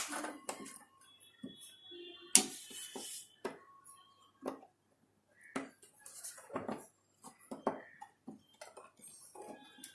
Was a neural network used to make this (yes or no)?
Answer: no